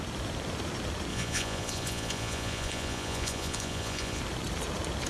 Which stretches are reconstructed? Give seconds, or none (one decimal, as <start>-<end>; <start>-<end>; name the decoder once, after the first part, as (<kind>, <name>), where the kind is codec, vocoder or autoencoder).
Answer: 1.1-4.2 (vocoder, Vocos)